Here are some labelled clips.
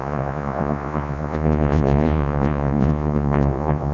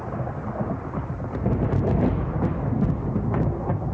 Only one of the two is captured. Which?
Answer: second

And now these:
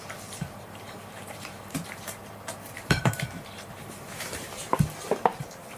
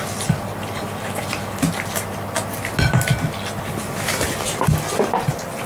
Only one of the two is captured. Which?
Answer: second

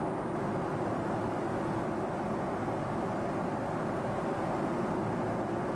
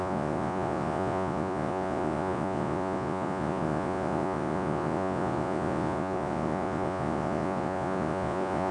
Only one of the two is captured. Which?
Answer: first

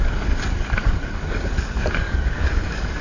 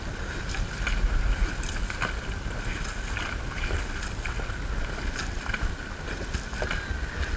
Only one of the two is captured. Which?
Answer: second